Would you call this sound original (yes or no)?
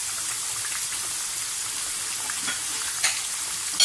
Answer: yes